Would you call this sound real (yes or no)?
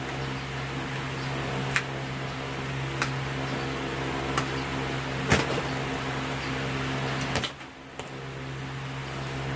yes